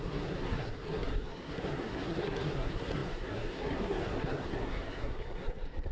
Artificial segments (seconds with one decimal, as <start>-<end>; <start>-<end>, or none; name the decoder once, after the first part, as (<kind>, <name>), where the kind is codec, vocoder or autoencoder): 0.0-5.9 (codec, SNAC)